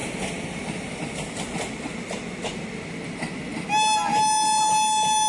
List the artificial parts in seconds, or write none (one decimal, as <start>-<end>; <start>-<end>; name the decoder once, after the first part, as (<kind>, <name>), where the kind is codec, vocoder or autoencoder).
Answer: none

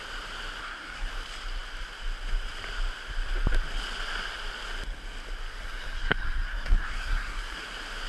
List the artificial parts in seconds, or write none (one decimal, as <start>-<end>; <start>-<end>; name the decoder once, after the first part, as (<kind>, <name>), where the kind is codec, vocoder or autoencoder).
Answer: 0.6-1.1 (codec, SNAC); 5.6-7.6

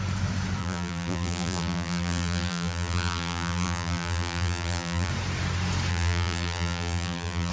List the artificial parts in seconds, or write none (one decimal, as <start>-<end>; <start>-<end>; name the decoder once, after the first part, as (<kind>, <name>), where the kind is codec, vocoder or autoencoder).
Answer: 0.6-5.1 (vocoder, BigVGAN v2); 5.9-7.5

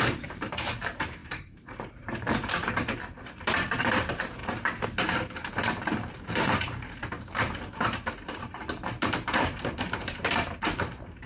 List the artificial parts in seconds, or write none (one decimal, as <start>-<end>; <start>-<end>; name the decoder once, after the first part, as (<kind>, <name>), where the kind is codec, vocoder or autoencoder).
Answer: 0.0-4.4 (vocoder, BigVGAN v2); 5.5-11.3

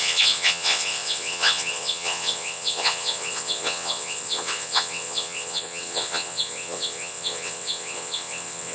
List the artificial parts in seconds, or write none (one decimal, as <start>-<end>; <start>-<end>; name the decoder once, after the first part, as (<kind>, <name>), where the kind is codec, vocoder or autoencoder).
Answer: 0.0-8.7 (vocoder, WaveNeXt)

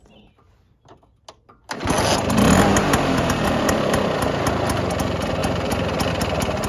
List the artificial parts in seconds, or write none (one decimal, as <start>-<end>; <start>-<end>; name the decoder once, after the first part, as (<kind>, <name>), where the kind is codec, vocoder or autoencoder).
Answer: none